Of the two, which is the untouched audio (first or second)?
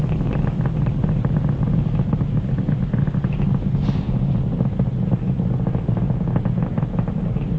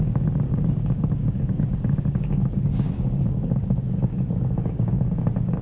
first